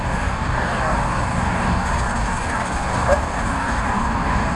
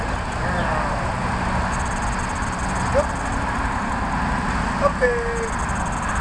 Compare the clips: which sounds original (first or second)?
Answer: second